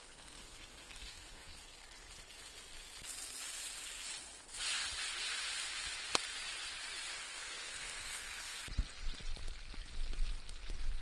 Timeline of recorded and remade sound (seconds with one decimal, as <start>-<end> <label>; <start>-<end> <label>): 0.0-1.6 remade; 1.6-7.1 recorded; 7.1-8.6 remade; 8.6-11.0 recorded